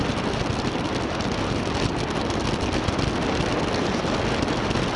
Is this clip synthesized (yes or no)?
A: no